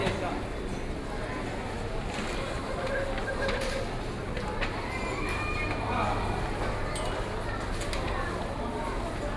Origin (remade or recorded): recorded